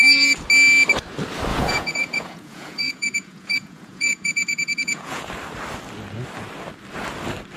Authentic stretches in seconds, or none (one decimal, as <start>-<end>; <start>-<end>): 0.0-1.5; 5.3-7.6